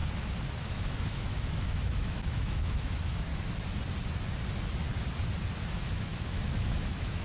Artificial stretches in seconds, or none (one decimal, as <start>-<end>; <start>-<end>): 0.6-3.3; 5.7-7.2